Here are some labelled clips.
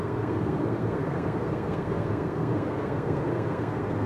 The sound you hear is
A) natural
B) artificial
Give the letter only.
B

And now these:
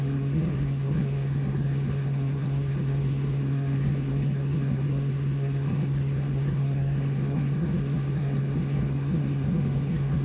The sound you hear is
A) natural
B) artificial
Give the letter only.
B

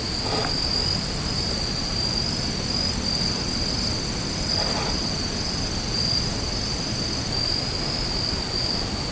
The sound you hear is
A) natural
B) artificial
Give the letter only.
A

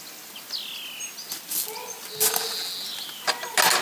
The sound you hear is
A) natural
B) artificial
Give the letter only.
A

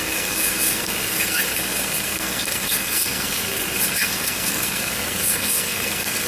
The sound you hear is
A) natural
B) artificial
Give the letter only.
B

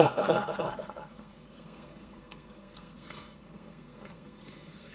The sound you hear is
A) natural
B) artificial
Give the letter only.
B